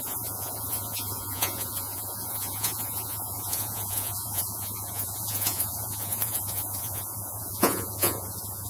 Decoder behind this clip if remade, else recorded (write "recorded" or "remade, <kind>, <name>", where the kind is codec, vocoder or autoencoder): remade, vocoder, Vocos